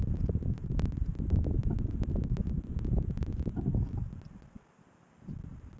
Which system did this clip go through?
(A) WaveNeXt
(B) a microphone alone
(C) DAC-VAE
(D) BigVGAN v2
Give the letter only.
B